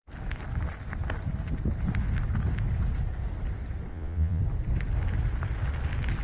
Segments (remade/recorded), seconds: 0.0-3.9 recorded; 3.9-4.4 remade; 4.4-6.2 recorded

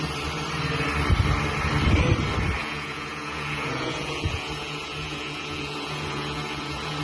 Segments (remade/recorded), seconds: 0.0-2.6 recorded; 2.6-7.0 remade

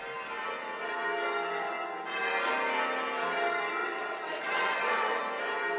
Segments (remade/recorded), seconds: 0.0-3.8 recorded; 3.8-5.2 remade; 5.2-5.8 recorded

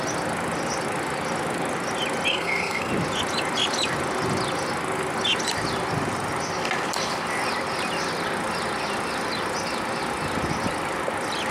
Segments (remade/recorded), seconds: 0.0-2.3 recorded; 2.3-2.9 remade; 2.9-11.5 recorded